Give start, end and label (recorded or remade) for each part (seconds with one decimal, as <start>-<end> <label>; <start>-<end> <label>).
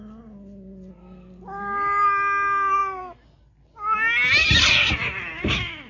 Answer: 0.0-5.9 recorded